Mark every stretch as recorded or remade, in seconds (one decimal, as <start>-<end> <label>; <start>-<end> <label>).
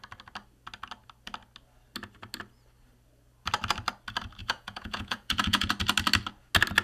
0.0-4.4 recorded; 4.4-5.7 remade; 5.7-6.8 recorded